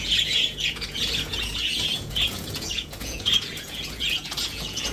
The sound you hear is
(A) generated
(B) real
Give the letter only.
A